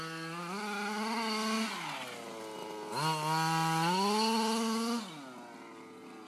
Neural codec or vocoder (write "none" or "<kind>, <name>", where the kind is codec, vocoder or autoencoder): none